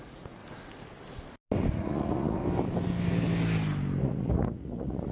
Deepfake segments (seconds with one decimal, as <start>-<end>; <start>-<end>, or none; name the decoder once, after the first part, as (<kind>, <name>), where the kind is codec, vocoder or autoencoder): 0.0-0.4 (vocoder, Vocos); 1.7-2.4; 4.0-5.1